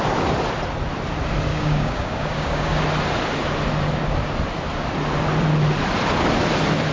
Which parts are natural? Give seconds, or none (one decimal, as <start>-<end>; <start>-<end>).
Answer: 0.0-1.5; 2.8-6.9